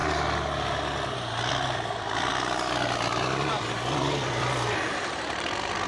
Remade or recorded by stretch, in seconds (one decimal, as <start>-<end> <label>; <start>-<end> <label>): 0.0-1.5 recorded; 1.5-5.9 remade